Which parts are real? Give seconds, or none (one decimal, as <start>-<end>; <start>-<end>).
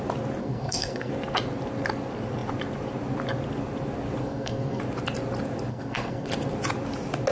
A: 0.0-0.4; 1.1-4.2; 4.8-5.7; 6.3-7.3